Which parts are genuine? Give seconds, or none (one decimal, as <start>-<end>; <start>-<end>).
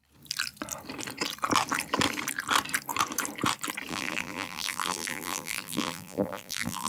0.0-3.9